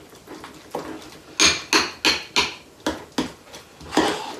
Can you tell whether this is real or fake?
real